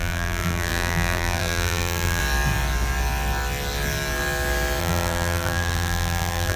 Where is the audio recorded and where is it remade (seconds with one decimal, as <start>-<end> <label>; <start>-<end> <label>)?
0.0-2.2 remade; 2.2-4.8 recorded; 4.8-6.6 remade